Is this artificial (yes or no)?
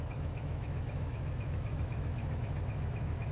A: yes